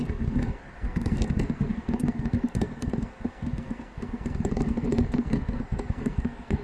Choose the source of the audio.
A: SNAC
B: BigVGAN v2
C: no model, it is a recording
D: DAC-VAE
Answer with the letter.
A